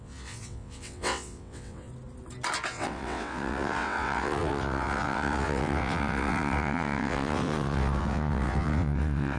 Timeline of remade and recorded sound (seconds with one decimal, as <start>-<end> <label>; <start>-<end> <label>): 0.0-1.9 remade; 1.9-2.7 recorded; 2.7-9.4 remade